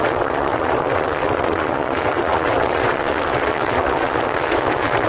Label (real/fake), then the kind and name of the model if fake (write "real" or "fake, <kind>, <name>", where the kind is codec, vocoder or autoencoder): fake, vocoder, WaveNeXt